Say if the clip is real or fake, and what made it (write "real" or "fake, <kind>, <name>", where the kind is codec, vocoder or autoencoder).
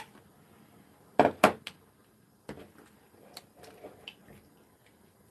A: real